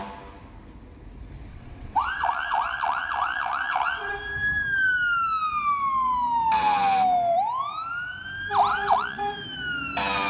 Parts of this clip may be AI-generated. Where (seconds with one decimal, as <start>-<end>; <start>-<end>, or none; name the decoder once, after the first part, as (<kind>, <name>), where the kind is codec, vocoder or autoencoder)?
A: 1.5-4.1 (vocoder, WaveNeXt); 8.7-9.2

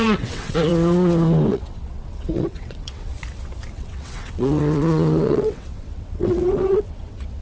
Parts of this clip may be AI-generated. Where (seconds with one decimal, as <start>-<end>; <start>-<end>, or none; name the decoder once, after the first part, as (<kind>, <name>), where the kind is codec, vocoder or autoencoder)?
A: 0.0-0.7 (vocoder, WaveNeXt); 1.5-3.1; 3.7-7.4

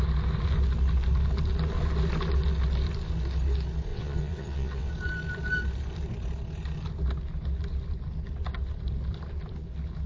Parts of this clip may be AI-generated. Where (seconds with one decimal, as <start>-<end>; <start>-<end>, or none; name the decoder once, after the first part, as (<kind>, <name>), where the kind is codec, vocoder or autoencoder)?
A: 3.9-4.9 (vocoder, WaveNeXt)

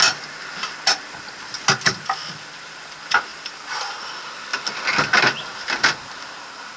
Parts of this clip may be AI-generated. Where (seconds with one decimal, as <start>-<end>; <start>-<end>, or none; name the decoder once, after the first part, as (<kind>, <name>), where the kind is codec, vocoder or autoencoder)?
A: none

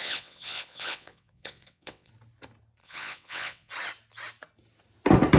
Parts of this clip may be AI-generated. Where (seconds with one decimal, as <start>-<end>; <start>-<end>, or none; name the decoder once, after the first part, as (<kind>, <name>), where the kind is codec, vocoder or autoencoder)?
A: 0.0-2.1 (vocoder, WaveNeXt); 2.8-3.7

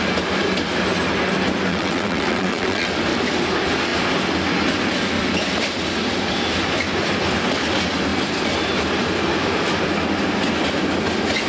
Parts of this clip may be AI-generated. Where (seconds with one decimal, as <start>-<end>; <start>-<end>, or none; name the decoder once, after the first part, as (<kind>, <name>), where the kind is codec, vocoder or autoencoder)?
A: 1.7-2.9 (vocoder, WaveNeXt)

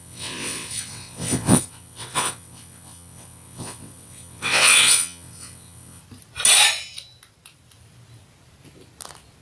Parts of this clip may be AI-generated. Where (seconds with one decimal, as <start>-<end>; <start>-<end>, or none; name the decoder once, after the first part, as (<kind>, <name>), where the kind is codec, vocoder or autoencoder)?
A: 0.0-6.0 (vocoder, WaveNeXt)